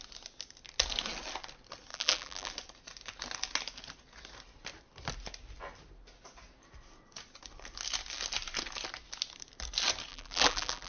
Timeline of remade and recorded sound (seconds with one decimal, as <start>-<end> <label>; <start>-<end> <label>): 0.0-1.9 recorded; 1.9-2.5 remade; 2.5-10.1 recorded; 10.1-10.9 remade